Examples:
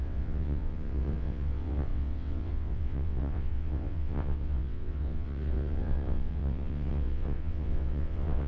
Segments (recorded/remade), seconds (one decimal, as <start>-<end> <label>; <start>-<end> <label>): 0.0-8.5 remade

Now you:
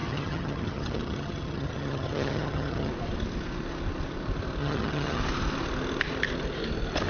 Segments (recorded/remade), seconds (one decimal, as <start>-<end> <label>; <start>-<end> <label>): 0.0-2.9 remade; 2.9-4.6 recorded; 4.6-5.2 remade; 5.2-7.1 recorded

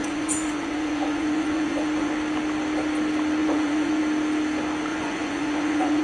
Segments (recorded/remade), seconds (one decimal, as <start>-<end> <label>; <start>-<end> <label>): 0.0-2.1 remade; 2.1-3.4 recorded; 3.4-4.0 remade; 4.0-4.9 recorded; 4.9-6.0 remade

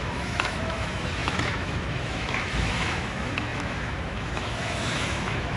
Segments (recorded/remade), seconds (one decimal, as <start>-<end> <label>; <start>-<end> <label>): 0.0-5.6 remade

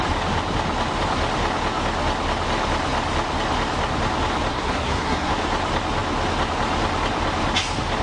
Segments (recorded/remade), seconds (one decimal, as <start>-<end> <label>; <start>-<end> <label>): 0.0-4.5 recorded; 4.5-5.3 remade; 5.3-8.0 recorded

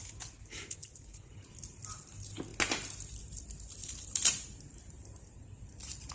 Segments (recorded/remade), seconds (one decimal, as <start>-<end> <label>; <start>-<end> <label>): 0.0-0.8 recorded; 0.8-1.5 remade; 1.5-3.8 recorded; 3.8-6.1 remade